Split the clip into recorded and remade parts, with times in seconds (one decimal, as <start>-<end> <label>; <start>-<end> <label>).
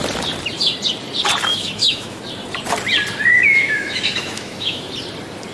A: 0.0-1.5 recorded; 1.5-2.2 remade; 2.2-3.3 recorded; 3.3-4.9 remade; 4.9-5.5 recorded